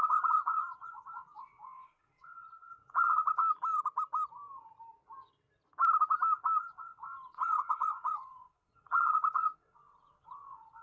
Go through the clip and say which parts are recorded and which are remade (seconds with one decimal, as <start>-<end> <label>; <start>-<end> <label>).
0.0-3.4 remade; 3.4-6.6 recorded; 6.6-10.8 remade